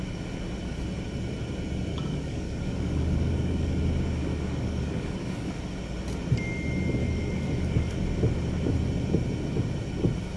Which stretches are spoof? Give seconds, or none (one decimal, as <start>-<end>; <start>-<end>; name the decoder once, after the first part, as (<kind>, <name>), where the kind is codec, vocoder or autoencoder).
1.9-3.8 (codec, DAC); 4.2-5.6; 7.0-8.0

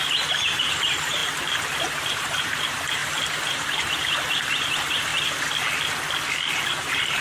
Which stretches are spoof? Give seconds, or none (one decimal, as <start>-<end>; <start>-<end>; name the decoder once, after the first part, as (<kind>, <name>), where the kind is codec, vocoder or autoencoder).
0.0-3.0 (vocoder, BigVGAN v2); 3.5-5.1; 6.5-7.2

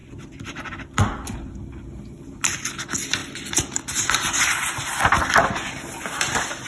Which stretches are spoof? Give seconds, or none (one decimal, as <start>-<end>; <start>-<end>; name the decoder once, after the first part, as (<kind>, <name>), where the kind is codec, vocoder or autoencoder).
0.0-1.3 (vocoder, BigVGAN v2); 3.2-6.7

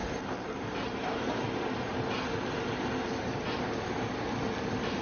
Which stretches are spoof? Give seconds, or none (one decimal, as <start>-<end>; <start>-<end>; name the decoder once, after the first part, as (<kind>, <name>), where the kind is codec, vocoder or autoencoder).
0.0-1.6 (vocoder, BigVGAN v2)